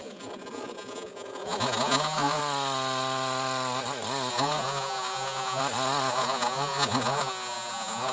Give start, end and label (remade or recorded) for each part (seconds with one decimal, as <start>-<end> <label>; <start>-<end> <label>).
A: 0.0-2.4 remade; 2.4-4.3 recorded; 4.3-5.6 remade; 5.6-6.1 recorded; 6.1-8.1 remade